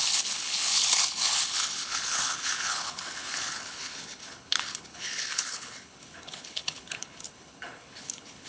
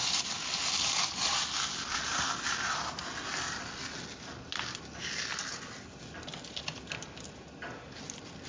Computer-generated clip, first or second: first